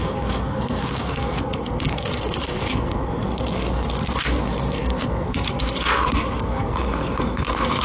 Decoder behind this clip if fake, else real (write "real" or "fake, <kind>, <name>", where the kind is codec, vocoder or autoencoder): fake, codec, SNAC